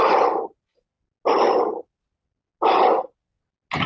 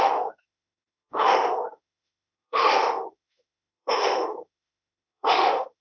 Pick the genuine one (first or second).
first